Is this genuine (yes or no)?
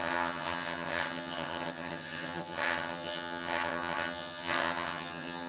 no